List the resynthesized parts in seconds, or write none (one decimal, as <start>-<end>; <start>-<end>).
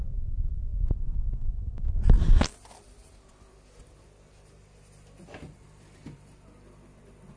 0.7-3.5